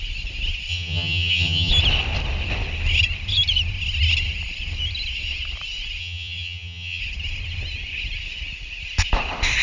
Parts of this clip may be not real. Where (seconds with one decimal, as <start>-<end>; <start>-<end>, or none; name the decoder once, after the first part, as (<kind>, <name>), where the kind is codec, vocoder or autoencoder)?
0.7-1.7 (vocoder, HiFi-GAN); 6.0-7.0